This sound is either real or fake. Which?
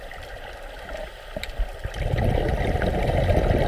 real